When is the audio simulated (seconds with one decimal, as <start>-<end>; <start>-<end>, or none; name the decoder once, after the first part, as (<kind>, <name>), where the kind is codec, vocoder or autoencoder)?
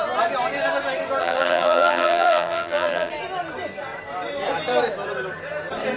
1.2-3.1 (vocoder, BigVGAN v2)